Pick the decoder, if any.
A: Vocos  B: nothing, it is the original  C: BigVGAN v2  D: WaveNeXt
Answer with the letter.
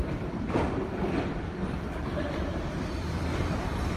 C